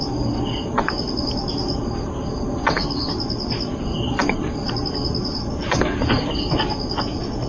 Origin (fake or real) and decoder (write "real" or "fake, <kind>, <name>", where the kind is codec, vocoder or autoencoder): real